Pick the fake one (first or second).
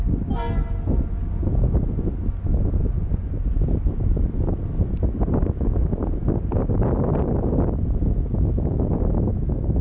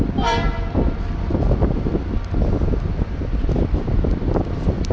second